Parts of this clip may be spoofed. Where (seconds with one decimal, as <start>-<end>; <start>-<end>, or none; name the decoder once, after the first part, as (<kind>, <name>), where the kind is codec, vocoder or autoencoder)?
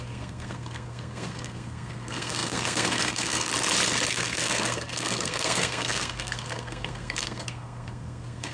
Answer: 0.0-3.5 (codec, SNAC); 4.1-8.5